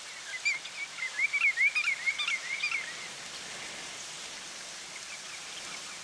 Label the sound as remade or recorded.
recorded